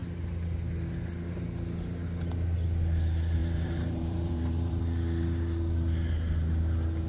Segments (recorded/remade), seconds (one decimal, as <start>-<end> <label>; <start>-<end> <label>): 0.0-3.4 recorded; 3.4-4.8 remade; 4.8-7.1 recorded

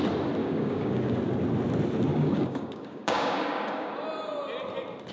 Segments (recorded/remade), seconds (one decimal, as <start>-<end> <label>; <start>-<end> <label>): 0.0-0.4 recorded; 0.4-0.9 remade; 0.9-2.1 recorded; 2.1-3.9 remade; 3.9-5.1 recorded

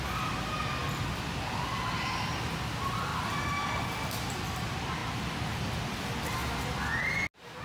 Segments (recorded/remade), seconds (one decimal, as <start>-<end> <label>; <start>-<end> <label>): 0.0-7.6 recorded

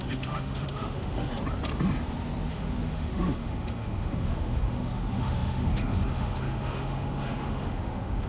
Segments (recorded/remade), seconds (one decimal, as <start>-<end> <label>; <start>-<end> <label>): 0.0-1.3 remade; 1.3-2.5 recorded; 2.5-8.3 remade